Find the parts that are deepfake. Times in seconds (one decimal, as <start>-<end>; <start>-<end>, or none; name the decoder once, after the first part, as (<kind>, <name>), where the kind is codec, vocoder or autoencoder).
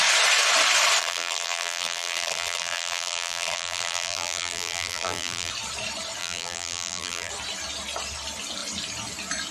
1.0-5.5 (vocoder, BigVGAN v2); 6.2-7.3